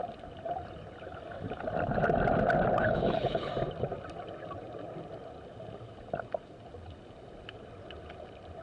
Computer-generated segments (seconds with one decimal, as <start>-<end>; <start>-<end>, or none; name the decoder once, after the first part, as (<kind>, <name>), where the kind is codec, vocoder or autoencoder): 2.8-3.5 (codec, HILCodec)